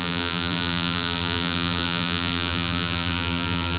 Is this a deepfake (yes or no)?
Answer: yes